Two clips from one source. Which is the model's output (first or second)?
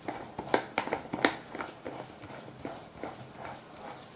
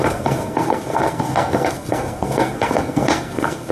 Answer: second